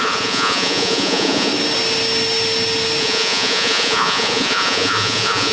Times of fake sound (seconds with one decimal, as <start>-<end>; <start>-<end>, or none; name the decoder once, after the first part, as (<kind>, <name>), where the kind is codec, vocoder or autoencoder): 0.0-1.5 (vocoder, Vocos); 3.0-5.5